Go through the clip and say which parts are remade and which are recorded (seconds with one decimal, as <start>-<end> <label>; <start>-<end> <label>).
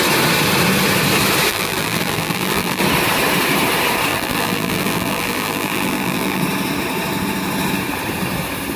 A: 0.0-1.5 recorded; 1.5-2.8 remade; 2.8-4.1 recorded; 4.1-6.4 remade; 6.4-8.8 recorded